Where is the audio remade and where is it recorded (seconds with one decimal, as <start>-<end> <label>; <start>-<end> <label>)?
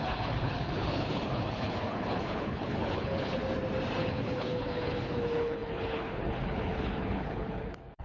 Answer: 0.0-3.4 remade; 3.4-4.0 recorded; 4.0-8.0 remade